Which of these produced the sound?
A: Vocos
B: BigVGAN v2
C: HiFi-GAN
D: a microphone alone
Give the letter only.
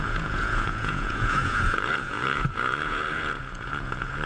A